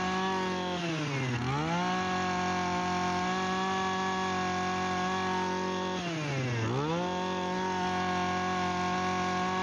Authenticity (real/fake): real